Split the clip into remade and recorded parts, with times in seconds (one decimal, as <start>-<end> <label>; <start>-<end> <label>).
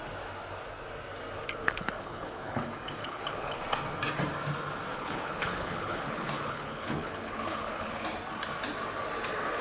0.0-1.6 recorded; 1.6-2.6 remade; 2.6-3.0 recorded; 3.0-3.6 remade; 3.6-4.9 recorded; 4.9-8.0 remade; 8.0-9.6 recorded